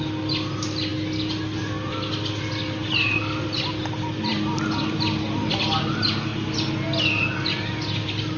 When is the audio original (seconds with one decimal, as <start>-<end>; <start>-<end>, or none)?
0.0-8.4